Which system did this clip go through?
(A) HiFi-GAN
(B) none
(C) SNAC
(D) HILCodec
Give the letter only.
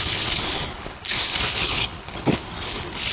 D